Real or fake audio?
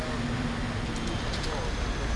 real